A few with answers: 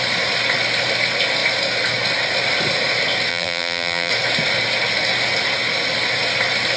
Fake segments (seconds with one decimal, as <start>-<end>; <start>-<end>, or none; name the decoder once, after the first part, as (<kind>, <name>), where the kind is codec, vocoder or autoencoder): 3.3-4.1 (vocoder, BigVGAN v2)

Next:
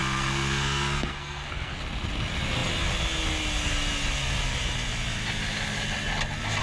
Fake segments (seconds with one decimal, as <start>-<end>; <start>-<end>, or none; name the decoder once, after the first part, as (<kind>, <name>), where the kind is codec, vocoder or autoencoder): 0.0-1.8 (codec, SNAC)

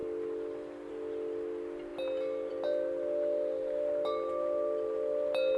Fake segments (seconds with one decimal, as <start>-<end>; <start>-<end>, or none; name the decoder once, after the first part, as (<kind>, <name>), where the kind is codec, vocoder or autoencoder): none

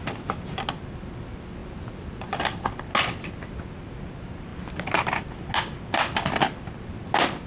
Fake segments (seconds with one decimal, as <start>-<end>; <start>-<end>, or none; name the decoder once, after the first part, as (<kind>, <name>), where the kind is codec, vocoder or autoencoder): none

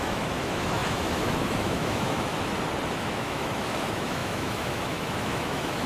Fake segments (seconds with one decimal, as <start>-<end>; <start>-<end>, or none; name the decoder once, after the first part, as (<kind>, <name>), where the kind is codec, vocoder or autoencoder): 0.0-2.3 (autoencoder, DAC-VAE); 2.9-5.9